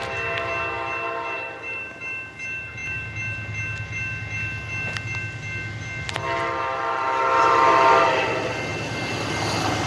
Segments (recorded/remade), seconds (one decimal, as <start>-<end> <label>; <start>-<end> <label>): 0.0-9.9 recorded